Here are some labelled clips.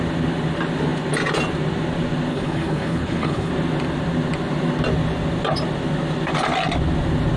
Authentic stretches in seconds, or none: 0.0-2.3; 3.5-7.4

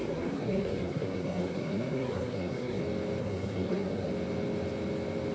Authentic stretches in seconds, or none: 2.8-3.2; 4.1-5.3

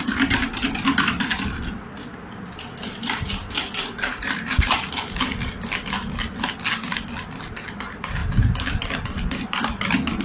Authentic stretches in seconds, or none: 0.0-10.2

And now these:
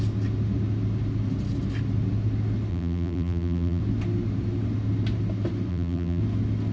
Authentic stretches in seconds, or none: 0.0-2.7; 3.8-5.7; 6.2-6.7

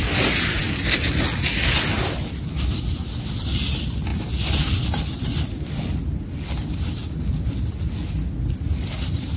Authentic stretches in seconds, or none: 0.0-9.4

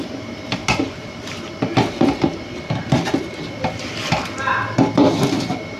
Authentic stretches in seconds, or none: 0.6-4.1